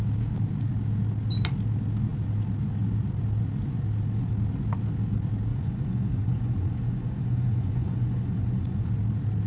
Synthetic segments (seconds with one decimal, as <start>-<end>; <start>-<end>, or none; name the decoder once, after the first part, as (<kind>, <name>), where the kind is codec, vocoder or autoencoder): 5.5-8.9 (vocoder, Vocos)